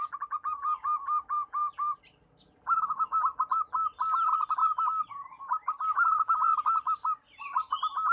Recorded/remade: recorded